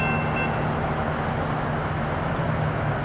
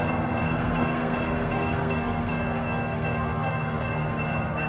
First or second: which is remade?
second